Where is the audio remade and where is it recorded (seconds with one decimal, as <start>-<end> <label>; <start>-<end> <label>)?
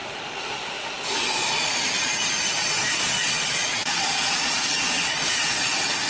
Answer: 0.0-2.6 recorded; 2.6-5.6 remade; 5.6-6.1 recorded